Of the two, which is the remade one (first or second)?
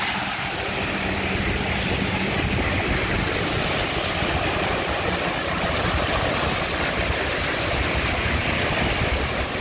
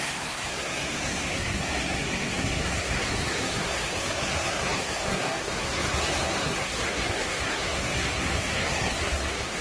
second